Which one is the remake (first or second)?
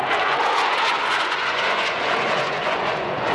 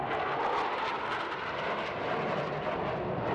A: first